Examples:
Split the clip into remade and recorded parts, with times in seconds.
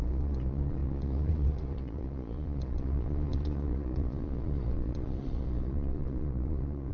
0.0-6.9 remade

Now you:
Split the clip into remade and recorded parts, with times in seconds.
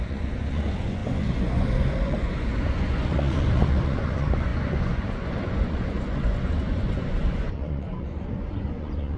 0.0-9.2 remade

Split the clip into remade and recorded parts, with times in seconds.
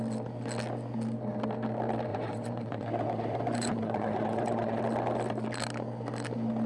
0.0-2.1 recorded; 2.1-4.8 remade; 4.8-6.7 recorded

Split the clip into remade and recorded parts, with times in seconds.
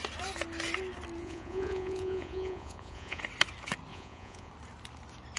0.0-1.2 recorded; 1.2-3.2 remade; 3.2-3.9 recorded; 3.9-4.5 remade; 4.5-5.4 recorded